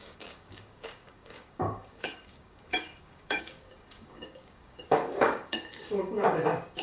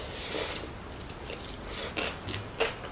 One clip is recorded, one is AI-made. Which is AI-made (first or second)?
first